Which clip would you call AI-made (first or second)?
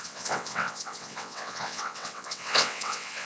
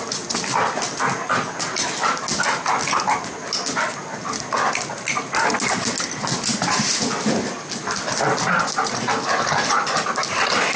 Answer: first